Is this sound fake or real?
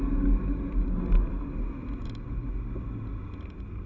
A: real